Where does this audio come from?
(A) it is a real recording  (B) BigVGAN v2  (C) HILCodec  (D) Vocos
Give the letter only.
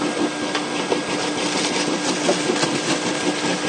A